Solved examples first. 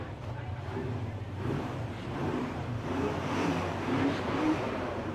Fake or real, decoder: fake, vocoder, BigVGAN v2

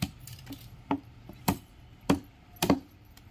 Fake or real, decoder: fake, vocoder, BigVGAN v2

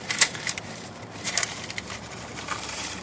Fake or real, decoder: fake, vocoder, BigVGAN v2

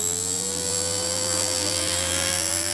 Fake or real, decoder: fake, vocoder, BigVGAN v2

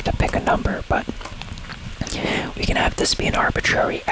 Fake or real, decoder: real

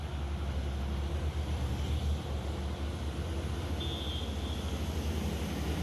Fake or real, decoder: real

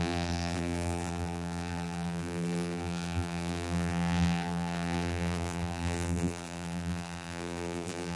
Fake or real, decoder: fake, vocoder, BigVGAN v2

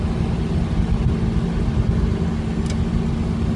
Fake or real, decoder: real